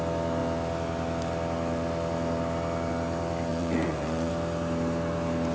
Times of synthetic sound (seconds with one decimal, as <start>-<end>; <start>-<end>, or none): 3.5-4.3